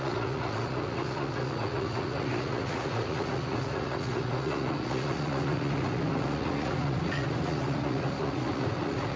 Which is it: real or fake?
fake